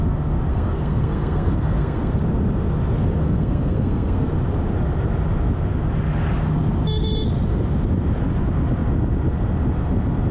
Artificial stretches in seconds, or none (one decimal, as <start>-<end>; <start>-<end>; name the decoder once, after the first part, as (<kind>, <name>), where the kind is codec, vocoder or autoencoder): 0.5-2.2 (codec, SNAC); 3.2-4.3